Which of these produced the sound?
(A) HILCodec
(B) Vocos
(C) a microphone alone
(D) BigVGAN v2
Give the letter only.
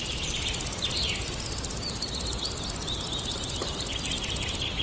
C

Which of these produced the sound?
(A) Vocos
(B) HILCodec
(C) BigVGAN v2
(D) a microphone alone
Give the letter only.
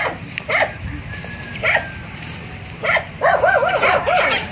D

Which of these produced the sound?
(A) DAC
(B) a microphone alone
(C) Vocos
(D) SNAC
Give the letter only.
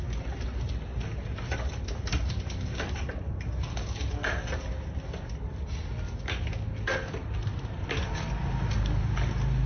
B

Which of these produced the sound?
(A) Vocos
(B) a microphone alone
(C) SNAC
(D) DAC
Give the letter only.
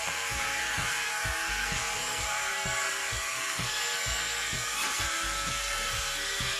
C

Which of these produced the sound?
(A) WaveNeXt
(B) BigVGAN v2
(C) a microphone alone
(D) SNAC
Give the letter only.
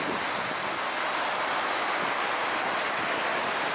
C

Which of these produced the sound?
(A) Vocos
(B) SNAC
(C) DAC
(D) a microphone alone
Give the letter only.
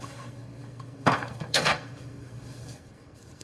B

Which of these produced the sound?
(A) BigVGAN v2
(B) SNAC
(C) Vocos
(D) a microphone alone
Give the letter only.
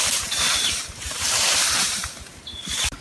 A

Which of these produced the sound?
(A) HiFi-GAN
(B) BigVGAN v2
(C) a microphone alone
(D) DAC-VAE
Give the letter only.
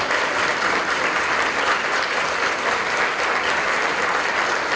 C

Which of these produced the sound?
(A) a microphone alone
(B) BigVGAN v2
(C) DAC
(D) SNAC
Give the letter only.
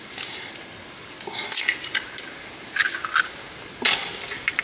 A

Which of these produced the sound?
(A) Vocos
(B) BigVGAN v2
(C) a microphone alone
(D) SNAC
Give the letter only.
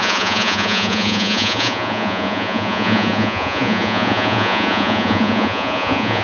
A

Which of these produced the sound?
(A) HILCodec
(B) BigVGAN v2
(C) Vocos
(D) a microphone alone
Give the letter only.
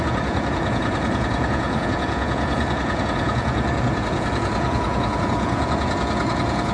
C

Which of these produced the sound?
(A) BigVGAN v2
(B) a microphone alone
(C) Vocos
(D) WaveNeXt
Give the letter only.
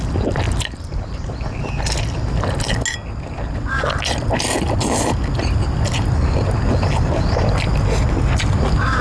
B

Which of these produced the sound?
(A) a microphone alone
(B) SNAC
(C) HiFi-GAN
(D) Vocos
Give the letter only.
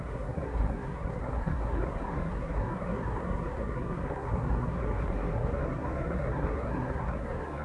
B